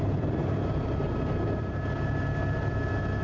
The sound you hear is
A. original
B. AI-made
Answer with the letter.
B